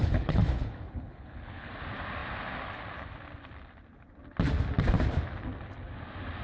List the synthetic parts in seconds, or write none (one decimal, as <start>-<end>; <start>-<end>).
0.0-1.7